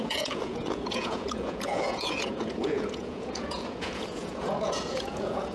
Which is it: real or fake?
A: fake